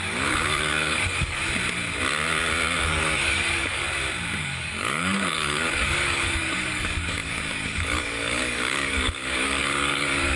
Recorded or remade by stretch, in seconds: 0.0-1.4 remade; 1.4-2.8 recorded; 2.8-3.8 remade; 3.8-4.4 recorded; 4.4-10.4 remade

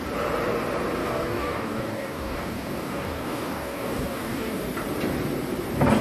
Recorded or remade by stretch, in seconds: 0.0-1.0 recorded; 1.0-4.6 remade; 4.6-6.0 recorded

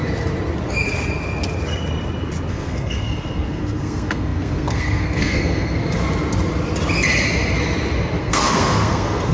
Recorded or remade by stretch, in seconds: 0.0-2.5 recorded; 2.5-5.8 remade; 5.8-8.2 recorded; 8.2-9.3 remade

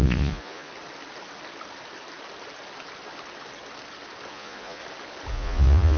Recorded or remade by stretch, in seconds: 0.0-0.7 remade; 0.7-4.3 recorded; 4.3-4.8 remade; 4.8-5.3 recorded; 5.3-6.0 remade

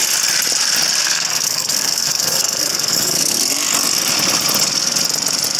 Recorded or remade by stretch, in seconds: 0.0-1.0 recorded; 1.0-3.4 remade; 3.4-5.6 recorded